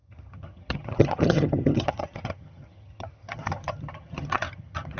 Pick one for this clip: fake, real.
fake